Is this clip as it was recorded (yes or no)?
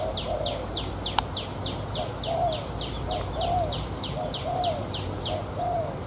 yes